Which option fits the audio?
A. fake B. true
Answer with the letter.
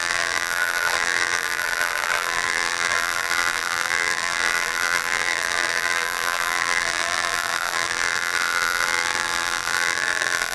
A